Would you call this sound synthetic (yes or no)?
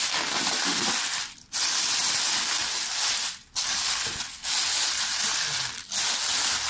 no